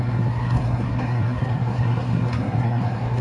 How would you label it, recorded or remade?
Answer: remade